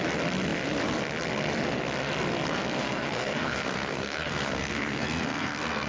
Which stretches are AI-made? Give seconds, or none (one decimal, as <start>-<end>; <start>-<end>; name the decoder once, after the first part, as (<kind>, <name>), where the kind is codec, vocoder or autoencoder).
2.8-5.9 (codec, SNAC)